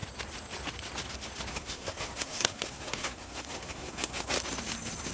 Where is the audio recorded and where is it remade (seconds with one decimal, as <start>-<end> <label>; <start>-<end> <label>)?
0.0-1.5 recorded; 1.5-4.3 remade; 4.3-5.1 recorded